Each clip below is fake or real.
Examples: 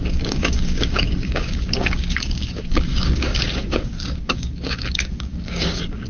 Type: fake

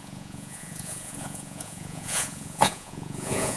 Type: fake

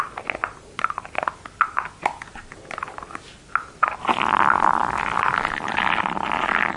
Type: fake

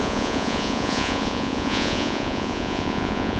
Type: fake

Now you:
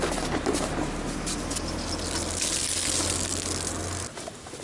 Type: real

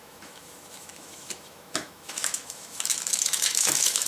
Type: fake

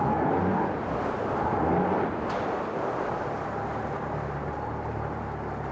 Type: real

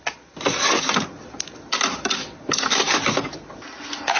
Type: real